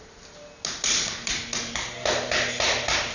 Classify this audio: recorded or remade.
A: recorded